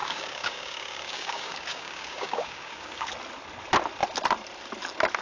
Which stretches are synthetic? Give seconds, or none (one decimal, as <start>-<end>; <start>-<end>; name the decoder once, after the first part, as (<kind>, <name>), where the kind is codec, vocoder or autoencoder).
0.0-3.1 (codec, DAC)